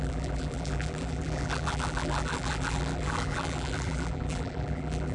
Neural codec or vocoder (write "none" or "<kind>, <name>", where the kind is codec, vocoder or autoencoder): vocoder, BigVGAN v2